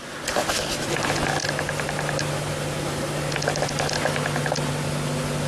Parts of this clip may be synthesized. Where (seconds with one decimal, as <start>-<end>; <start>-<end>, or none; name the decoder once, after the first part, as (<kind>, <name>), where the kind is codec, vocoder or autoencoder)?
none